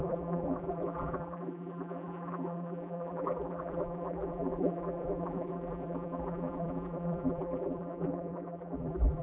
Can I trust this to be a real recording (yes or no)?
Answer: no